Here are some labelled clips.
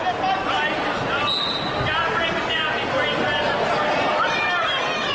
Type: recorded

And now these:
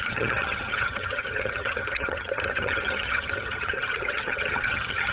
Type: remade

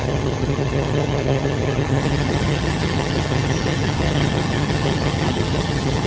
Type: remade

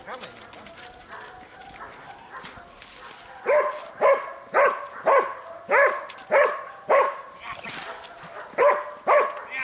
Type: recorded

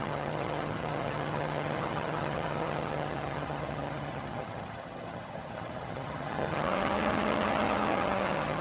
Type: remade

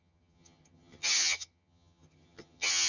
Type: remade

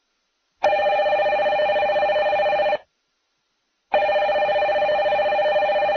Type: recorded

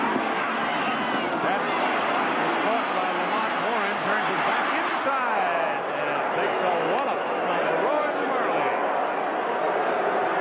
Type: recorded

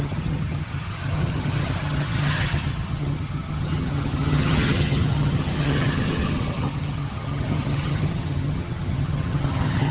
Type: remade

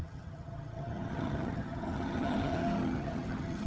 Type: remade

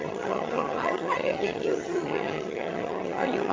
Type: remade